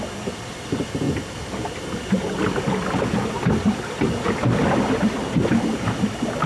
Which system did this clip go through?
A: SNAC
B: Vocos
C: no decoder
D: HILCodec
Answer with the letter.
C